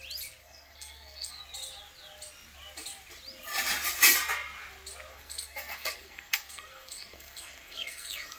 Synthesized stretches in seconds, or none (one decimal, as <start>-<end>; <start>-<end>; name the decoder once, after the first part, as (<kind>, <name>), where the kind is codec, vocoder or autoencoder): 0.4-1.4 (codec, SNAC); 5.1-8.4